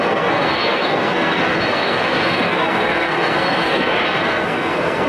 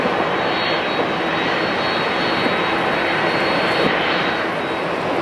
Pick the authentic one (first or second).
second